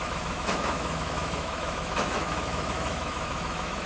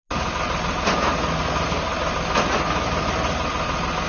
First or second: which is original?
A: second